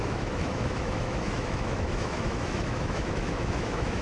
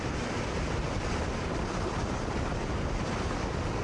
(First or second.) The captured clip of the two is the second